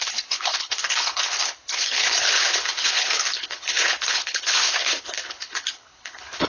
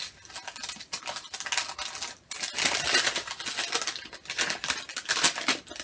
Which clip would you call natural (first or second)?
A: second